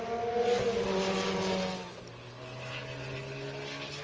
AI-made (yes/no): no